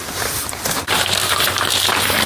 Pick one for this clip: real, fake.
real